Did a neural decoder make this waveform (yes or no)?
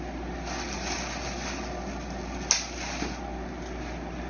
no